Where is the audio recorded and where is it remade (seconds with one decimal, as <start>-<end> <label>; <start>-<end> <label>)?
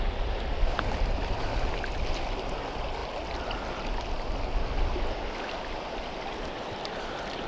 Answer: 0.0-7.5 recorded